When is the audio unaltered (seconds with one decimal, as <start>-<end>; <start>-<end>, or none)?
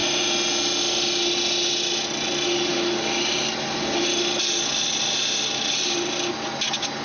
0.0-7.0